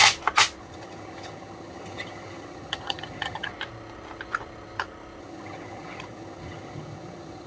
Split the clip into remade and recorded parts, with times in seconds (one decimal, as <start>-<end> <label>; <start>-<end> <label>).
0.0-0.6 recorded; 0.6-3.5 remade; 3.5-5.2 recorded; 5.2-7.5 remade